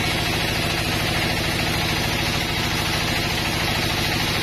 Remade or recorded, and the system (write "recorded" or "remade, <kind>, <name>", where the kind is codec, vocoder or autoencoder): recorded